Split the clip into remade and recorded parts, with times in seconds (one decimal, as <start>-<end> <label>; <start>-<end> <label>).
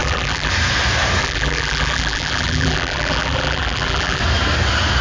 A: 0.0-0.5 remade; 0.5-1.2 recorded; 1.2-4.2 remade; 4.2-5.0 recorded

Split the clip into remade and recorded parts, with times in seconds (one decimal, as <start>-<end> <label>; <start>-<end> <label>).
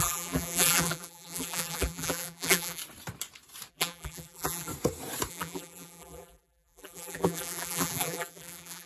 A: 0.0-2.8 remade; 2.8-3.7 recorded; 3.7-4.7 remade; 4.7-5.3 recorded; 5.3-8.9 remade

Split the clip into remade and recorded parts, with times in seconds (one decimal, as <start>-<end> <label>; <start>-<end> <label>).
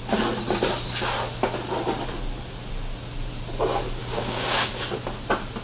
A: 0.0-4.0 recorded; 4.0-4.7 remade; 4.7-5.6 recorded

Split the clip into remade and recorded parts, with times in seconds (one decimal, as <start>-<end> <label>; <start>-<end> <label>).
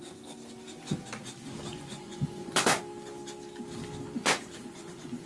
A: 0.0-1.7 recorded; 1.7-2.8 remade; 2.8-4.2 recorded; 4.2-5.3 remade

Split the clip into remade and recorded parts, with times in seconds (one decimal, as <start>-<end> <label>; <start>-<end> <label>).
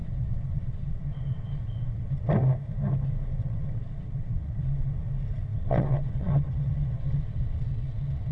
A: 0.0-2.3 remade; 2.3-3.4 recorded; 3.4-5.0 remade; 5.0-5.5 recorded; 5.5-8.3 remade